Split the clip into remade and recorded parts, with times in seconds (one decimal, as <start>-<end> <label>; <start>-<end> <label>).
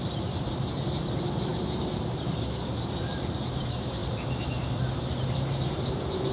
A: 0.0-6.3 remade